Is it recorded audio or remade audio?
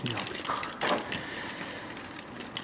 recorded